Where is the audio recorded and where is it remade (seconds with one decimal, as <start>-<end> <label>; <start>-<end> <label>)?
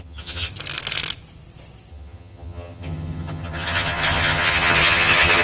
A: 0.0-0.5 remade; 0.5-1.9 recorded; 1.9-5.4 remade